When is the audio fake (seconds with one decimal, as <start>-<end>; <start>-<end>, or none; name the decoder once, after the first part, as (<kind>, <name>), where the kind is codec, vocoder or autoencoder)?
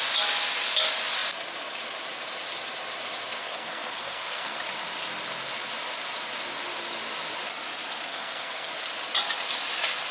3.4-4.6 (codec, SNAC); 8.1-8.7